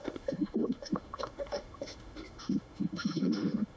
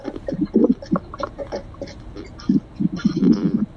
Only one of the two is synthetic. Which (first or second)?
first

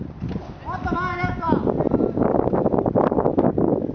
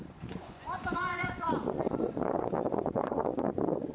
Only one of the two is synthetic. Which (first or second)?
second